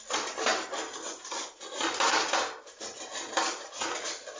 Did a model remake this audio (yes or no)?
no